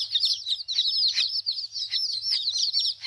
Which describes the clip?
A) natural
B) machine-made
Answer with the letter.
B